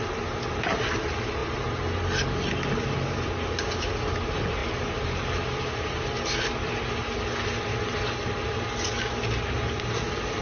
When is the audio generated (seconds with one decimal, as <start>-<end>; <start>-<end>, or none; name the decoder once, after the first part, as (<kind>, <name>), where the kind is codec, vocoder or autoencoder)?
none